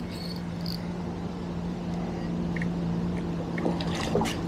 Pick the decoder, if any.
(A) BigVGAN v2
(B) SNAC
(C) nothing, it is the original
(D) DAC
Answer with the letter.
C